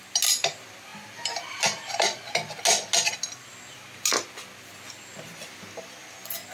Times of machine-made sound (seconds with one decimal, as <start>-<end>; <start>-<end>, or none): none